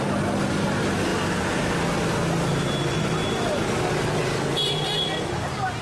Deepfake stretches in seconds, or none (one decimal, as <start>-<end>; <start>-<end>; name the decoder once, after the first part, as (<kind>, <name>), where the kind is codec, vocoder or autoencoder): none